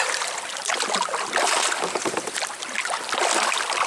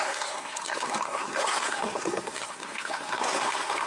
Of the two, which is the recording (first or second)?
first